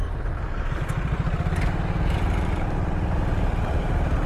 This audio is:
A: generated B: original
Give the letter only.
B